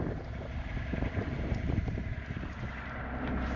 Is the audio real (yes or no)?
yes